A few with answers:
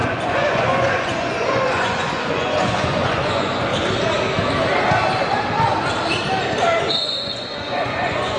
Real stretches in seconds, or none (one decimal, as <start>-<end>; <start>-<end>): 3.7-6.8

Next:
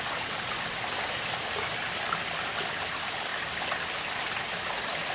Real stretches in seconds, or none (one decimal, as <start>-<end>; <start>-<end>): 0.0-5.1

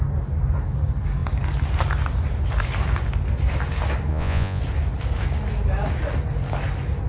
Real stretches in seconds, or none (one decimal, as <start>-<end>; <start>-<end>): 0.0-4.1; 4.6-7.1

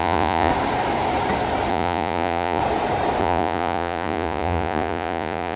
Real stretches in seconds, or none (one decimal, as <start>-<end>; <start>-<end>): 0.5-1.7; 2.6-3.2

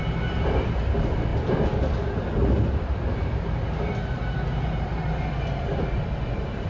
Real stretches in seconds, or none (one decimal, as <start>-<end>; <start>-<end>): 0.0-6.7

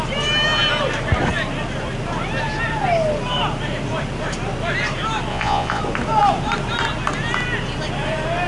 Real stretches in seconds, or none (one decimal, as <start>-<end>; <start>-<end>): 0.0-5.3; 5.8-8.5

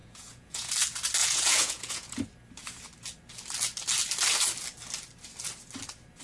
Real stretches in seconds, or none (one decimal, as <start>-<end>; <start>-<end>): 0.7-1.2; 2.2-6.2